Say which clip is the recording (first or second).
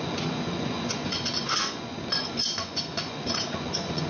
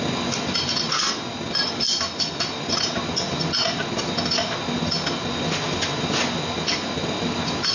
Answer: second